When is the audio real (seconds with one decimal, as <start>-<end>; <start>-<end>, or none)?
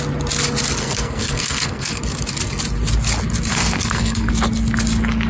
0.0-0.8; 2.0-3.5; 4.3-5.3